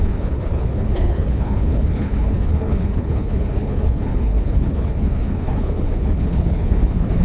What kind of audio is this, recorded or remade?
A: remade